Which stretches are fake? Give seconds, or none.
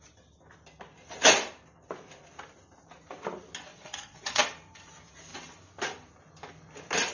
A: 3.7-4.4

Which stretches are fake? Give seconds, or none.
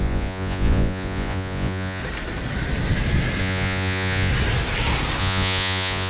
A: 0.0-2.0; 3.4-4.3; 5.2-6.1